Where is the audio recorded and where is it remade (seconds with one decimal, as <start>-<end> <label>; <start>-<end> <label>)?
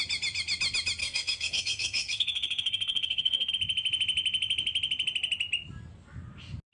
0.0-1.0 recorded; 1.0-3.5 remade; 3.5-6.7 recorded